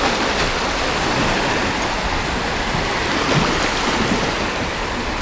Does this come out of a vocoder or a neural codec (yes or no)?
no